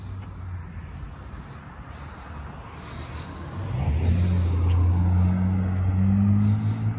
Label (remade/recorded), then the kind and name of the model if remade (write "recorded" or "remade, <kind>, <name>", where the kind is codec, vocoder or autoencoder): recorded